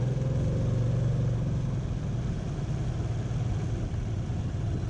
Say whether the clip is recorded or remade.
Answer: recorded